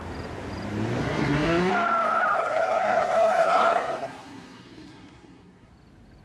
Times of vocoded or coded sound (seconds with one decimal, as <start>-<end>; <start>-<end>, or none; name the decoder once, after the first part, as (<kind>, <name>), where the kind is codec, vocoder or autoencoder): 1.0-1.7 (codec, SNAC); 2.3-5.7